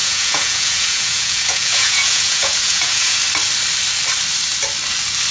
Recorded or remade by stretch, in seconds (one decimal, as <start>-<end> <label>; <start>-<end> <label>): 0.0-3.2 remade; 3.2-5.3 recorded